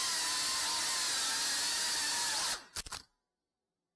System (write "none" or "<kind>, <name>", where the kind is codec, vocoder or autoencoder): none